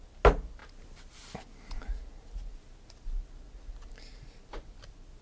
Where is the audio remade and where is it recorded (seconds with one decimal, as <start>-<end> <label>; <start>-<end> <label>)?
0.0-5.2 recorded

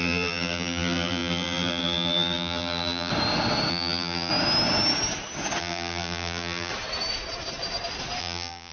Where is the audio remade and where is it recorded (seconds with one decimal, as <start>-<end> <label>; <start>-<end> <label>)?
0.0-3.1 remade; 3.1-3.7 recorded; 3.7-4.3 remade; 4.3-5.6 recorded; 5.6-6.7 remade; 6.7-8.2 recorded; 8.2-8.7 remade

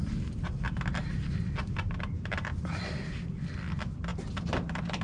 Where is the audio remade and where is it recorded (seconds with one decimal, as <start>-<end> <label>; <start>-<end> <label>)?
0.0-5.0 recorded

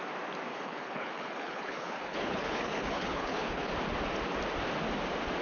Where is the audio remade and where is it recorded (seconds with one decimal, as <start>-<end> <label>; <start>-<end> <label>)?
0.0-0.5 recorded; 0.5-3.7 remade; 3.7-5.4 recorded

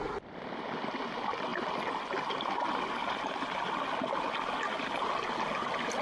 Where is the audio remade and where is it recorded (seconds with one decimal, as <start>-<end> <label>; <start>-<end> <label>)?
0.0-6.0 recorded

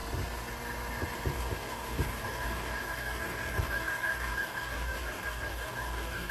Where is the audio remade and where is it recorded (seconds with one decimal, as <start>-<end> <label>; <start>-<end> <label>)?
0.0-1.3 recorded; 1.3-6.3 remade